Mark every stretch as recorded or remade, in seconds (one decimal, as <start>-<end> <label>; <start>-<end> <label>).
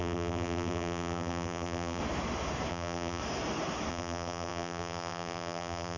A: 0.0-2.0 remade; 2.0-2.7 recorded; 2.7-3.2 remade; 3.2-3.9 recorded; 3.9-6.0 remade